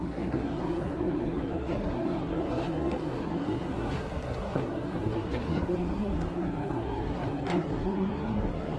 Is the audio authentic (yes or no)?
no